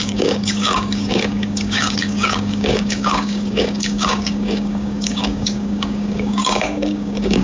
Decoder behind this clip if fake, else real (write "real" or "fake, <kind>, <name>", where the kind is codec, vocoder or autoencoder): fake, codec, DAC